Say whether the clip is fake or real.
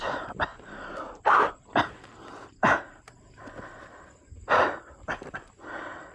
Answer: real